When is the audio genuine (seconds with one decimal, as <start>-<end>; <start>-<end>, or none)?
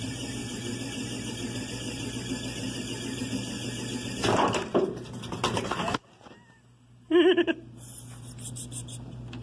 0.4-4.1; 5.9-8.5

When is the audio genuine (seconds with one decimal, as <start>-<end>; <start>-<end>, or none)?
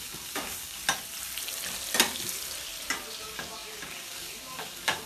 0.8-3.2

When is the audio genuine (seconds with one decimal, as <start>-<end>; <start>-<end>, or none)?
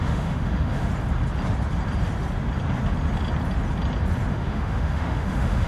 0.9-4.3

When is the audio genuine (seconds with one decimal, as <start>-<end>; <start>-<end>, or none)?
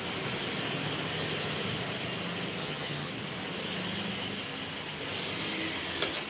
0.0-2.6; 3.1-6.3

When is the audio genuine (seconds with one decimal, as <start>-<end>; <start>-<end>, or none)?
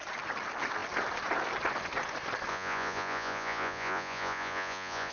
0.0-2.5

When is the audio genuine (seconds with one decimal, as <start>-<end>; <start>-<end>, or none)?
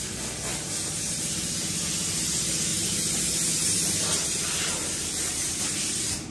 0.0-0.5; 1.7-2.7; 3.2-3.6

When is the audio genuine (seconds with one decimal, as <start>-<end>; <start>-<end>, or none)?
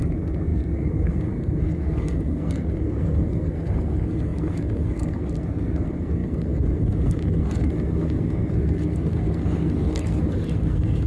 none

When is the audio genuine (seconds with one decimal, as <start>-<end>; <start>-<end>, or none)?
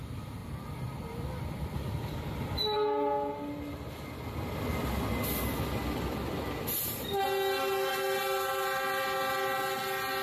0.0-10.2